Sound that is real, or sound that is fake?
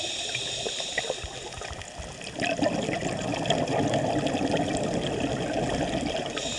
real